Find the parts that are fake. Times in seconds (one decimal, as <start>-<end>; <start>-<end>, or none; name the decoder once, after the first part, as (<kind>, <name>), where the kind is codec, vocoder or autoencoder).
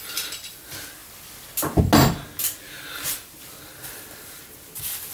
none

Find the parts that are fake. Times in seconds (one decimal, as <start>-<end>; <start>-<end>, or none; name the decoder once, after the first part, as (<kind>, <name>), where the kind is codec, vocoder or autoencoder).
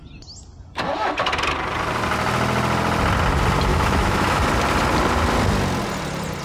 3.7-4.4 (autoencoder, DAC-VAE)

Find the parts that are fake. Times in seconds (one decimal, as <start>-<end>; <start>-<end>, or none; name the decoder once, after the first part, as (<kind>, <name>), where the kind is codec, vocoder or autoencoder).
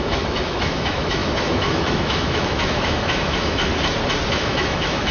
0.0-3.7 (autoencoder, DAC-VAE); 4.3-5.1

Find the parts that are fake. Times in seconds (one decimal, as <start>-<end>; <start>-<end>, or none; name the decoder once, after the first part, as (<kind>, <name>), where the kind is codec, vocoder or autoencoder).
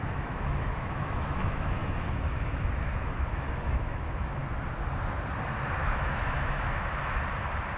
0.0-4.4 (autoencoder, DAC-VAE); 5.8-7.0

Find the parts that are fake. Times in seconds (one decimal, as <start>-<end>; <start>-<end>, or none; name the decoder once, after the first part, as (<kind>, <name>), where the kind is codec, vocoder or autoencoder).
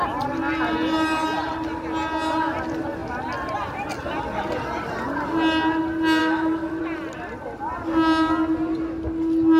6.2-6.8 (autoencoder, DAC-VAE)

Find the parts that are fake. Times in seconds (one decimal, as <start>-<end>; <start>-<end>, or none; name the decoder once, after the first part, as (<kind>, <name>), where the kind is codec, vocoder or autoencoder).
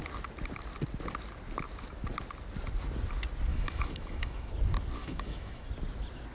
3.5-4.5 (autoencoder, DAC-VAE); 5.0-5.7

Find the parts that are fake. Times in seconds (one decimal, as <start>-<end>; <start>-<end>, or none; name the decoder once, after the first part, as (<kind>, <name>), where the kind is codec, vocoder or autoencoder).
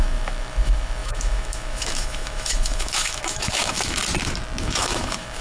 0.0-4.0 (autoencoder, DAC-VAE); 4.6-5.4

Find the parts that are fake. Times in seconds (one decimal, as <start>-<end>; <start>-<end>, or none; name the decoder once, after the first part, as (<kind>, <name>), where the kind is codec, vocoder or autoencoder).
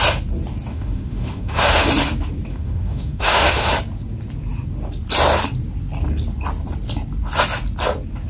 0.7-1.9 (autoencoder, DAC-VAE); 2.5-3.7